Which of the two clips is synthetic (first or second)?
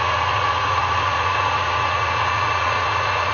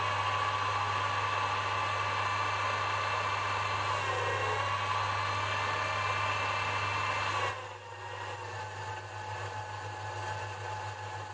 first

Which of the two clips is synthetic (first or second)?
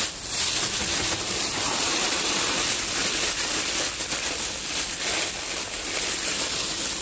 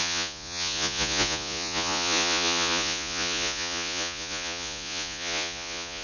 second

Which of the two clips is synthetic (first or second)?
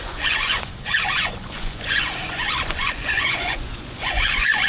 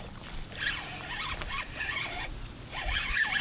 first